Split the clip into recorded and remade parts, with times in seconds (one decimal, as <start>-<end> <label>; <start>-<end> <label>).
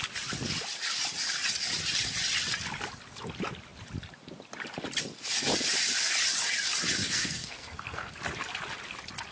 0.0-7.0 recorded; 7.0-8.1 remade; 8.1-9.3 recorded